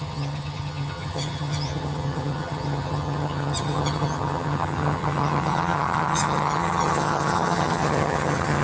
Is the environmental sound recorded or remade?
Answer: remade